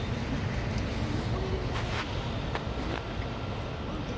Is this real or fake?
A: real